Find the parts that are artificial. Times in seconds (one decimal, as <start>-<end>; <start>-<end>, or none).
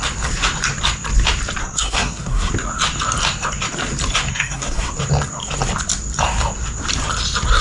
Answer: 1.6-2.5; 4.3-4.9